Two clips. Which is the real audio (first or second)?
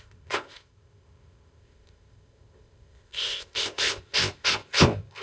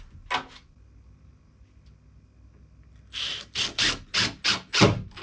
second